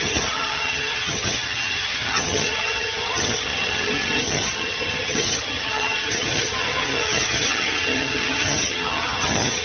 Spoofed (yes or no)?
yes